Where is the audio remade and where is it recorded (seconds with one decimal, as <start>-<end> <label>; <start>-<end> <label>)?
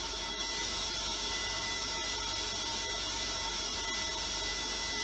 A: 0.0-2.0 remade; 2.0-2.7 recorded; 2.7-3.7 remade; 3.7-4.5 recorded; 4.5-5.0 remade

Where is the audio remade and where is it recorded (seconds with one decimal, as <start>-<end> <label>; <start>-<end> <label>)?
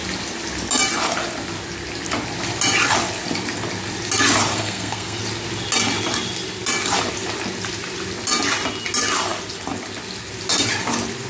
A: 0.0-4.5 recorded; 4.5-5.2 remade; 5.2-11.3 recorded